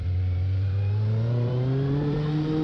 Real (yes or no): no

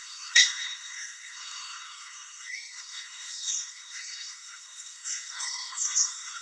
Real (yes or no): no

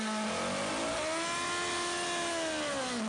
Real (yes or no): yes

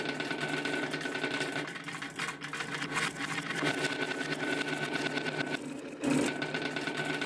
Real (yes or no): yes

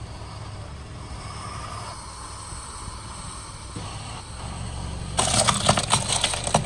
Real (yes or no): yes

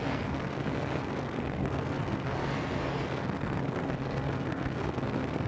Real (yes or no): no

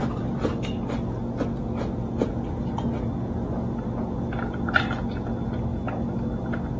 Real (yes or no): yes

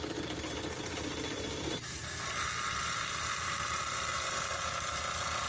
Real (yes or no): no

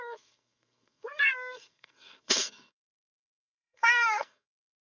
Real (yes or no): no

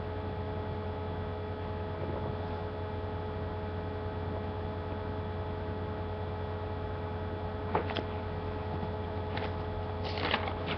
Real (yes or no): yes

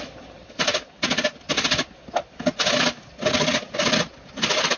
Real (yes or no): yes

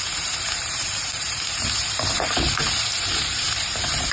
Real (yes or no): no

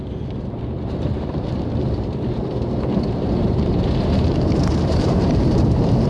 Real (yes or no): no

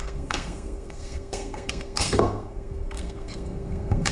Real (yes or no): no